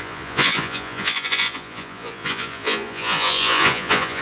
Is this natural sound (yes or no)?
no